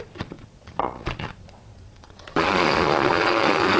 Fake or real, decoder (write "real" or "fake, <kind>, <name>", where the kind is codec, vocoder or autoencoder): fake, vocoder, Vocos